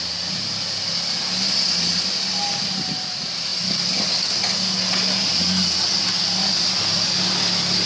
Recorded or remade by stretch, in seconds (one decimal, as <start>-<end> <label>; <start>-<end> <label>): 0.0-7.9 recorded